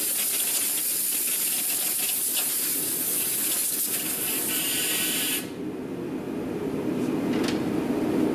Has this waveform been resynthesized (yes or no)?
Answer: no